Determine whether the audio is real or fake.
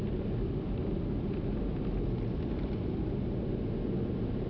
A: real